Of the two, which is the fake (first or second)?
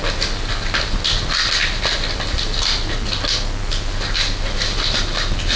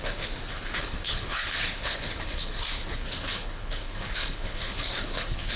second